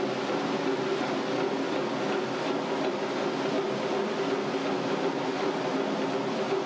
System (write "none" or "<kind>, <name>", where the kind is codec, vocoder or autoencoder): none